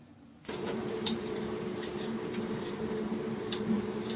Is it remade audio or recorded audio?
remade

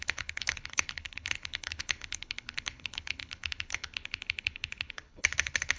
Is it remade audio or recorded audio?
remade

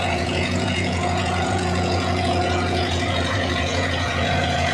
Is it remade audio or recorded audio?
remade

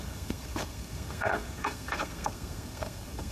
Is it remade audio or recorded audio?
remade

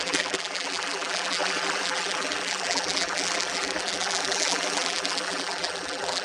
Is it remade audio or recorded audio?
remade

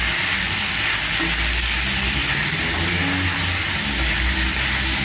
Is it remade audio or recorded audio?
recorded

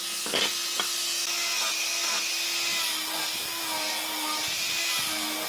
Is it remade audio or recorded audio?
recorded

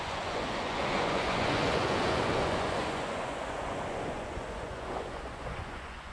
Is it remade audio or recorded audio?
remade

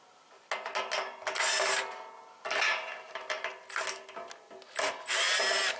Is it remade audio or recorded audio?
recorded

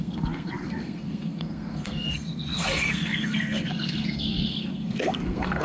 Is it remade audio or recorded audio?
remade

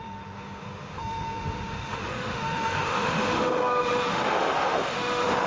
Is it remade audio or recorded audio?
remade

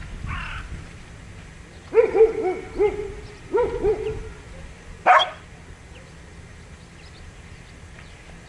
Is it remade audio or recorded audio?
recorded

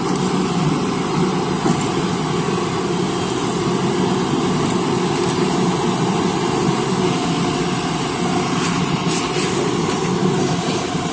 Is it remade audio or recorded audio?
recorded